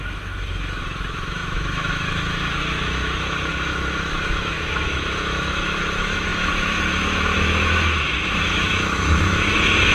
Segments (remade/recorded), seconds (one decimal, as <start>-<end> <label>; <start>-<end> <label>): 0.0-9.9 remade